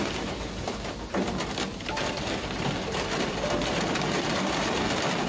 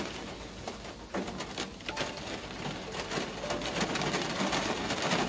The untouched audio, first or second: second